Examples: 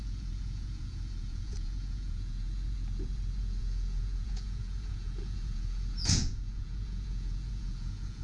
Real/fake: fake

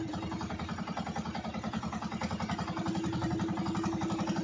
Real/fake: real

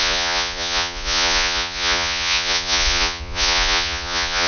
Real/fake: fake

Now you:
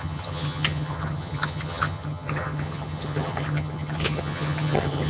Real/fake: fake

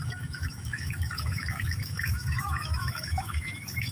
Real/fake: fake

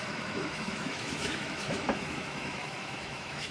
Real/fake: fake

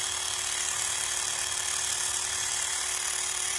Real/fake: real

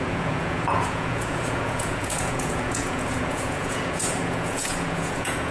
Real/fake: fake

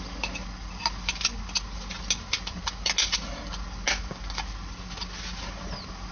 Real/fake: real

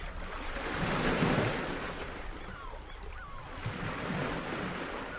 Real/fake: real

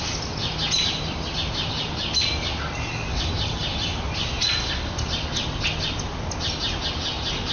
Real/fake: real